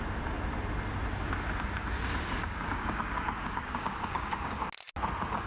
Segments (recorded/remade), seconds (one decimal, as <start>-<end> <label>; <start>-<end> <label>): 0.0-2.4 recorded; 2.4-4.6 remade; 4.6-5.5 recorded